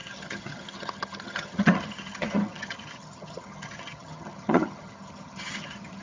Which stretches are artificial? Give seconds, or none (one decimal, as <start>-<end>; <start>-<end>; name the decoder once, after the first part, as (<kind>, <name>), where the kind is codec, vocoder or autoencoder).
0.0-6.0 (vocoder, HiFi-GAN)